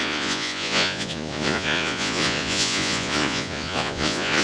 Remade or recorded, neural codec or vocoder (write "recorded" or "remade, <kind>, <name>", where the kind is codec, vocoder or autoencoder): remade, vocoder, Vocos